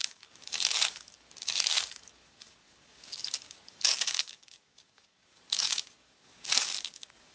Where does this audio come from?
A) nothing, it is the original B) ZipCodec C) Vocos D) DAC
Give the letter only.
D